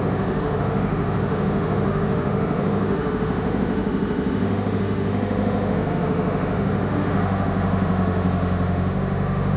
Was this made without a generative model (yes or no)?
no